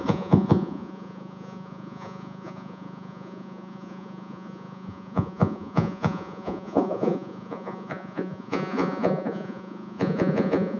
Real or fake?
fake